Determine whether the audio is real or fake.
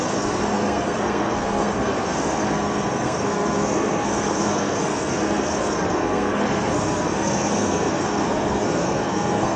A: fake